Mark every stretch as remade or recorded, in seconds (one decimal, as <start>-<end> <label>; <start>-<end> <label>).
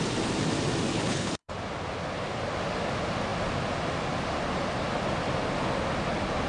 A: 0.0-0.9 recorded; 0.9-1.5 remade; 1.5-6.5 recorded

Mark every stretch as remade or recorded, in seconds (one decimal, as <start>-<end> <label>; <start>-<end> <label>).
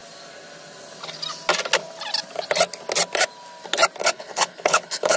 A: 0.0-4.0 recorded; 4.0-5.2 remade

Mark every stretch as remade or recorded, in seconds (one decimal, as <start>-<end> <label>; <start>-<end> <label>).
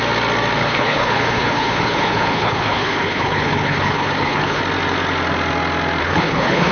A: 0.0-0.6 recorded; 0.6-4.6 remade; 4.6-6.0 recorded; 6.0-6.7 remade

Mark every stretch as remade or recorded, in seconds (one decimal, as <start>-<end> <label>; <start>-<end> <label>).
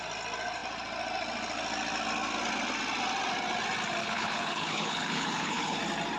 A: 0.0-4.0 recorded; 4.0-5.8 remade; 5.8-6.2 recorded